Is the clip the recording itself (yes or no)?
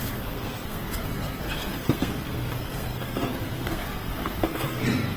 no